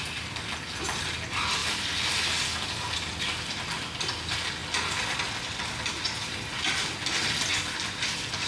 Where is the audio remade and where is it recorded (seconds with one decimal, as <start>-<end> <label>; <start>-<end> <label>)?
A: 0.0-8.5 recorded